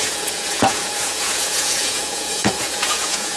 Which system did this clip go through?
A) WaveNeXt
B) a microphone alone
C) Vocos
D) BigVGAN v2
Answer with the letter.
C